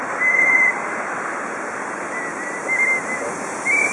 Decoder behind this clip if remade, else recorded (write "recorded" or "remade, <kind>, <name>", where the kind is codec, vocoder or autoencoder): recorded